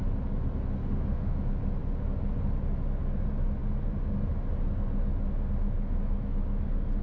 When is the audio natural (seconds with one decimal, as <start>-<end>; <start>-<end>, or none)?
0.0-0.8; 1.4-7.0